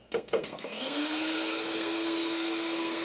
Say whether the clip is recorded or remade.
remade